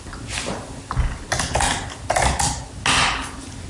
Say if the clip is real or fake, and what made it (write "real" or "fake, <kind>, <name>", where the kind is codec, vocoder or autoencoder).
real